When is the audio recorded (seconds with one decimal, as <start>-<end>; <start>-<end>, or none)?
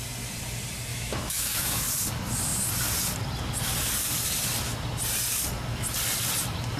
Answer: 0.0-0.9; 1.8-6.8